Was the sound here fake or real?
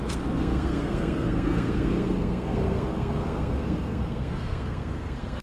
fake